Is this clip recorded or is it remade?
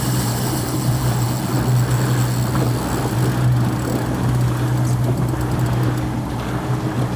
recorded